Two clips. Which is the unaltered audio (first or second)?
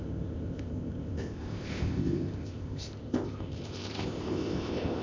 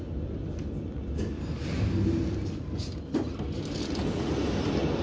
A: second